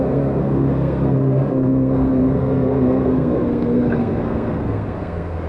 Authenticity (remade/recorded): remade